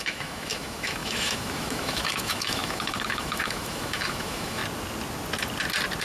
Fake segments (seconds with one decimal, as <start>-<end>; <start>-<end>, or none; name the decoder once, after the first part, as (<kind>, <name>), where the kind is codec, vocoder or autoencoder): 0.0-4.6 (autoencoder, DAC-VAE)